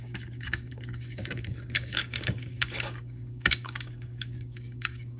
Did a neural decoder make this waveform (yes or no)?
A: yes